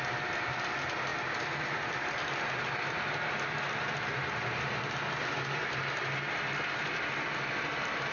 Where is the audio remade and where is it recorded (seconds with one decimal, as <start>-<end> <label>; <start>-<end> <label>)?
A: 0.0-8.1 recorded